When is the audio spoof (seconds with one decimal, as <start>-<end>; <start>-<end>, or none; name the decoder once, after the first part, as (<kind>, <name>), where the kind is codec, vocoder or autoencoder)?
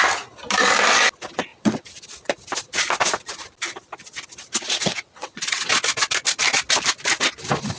1.5-2.0 (vocoder, WaveNeXt); 4.8-5.7